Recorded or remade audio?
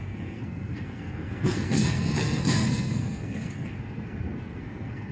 remade